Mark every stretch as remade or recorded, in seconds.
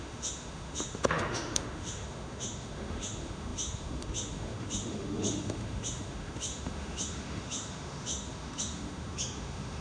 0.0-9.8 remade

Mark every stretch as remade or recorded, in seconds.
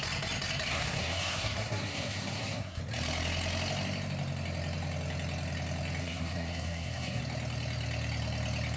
0.0-0.7 recorded; 0.7-2.8 remade; 2.8-6.0 recorded; 6.0-7.2 remade; 7.2-8.8 recorded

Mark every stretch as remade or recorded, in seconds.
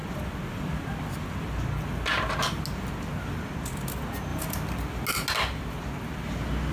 0.0-6.7 recorded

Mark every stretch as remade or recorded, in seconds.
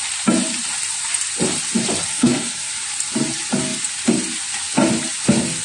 0.0-2.1 recorded; 2.1-2.7 remade; 2.7-5.6 recorded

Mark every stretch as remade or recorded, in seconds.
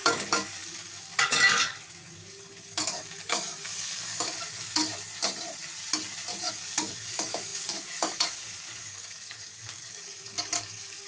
0.0-4.9 remade; 4.9-6.4 recorded; 6.4-11.1 remade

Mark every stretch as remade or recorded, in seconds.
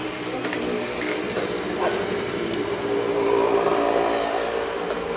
0.0-1.2 remade; 1.2-4.3 recorded; 4.3-5.2 remade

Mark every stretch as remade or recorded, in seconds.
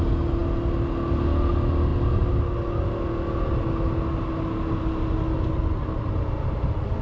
0.0-7.0 recorded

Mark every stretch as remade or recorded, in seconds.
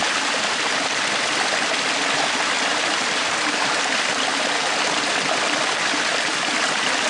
0.0-0.7 remade; 0.7-2.7 recorded; 2.7-3.5 remade; 3.5-7.1 recorded